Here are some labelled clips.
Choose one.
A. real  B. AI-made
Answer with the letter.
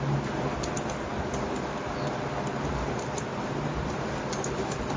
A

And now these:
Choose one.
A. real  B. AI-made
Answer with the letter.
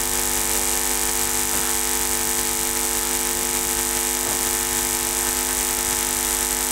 A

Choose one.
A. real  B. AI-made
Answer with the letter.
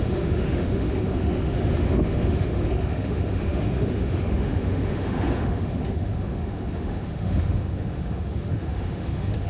B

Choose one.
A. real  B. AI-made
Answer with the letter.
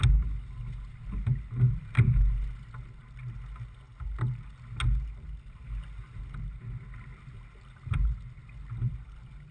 A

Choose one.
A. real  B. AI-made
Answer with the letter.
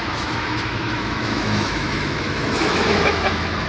B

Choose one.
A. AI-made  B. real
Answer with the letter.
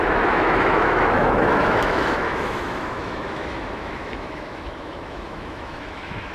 A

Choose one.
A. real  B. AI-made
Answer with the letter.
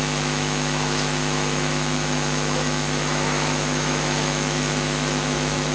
B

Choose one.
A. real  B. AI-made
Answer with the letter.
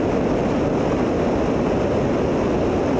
A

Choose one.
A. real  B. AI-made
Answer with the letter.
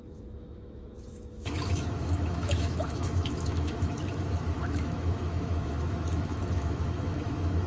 B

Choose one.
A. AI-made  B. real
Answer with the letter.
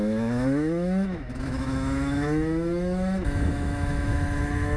A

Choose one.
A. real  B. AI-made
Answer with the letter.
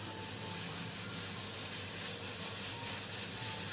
A